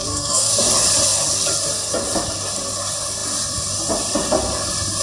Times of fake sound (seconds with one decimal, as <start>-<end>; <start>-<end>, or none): 0.0-0.6